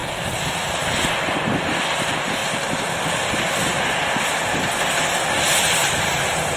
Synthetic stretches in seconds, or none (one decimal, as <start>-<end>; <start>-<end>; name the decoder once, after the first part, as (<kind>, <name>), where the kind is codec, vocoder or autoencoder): 0.0-0.8 (vocoder, BigVGAN v2); 2.4-5.3; 5.8-6.6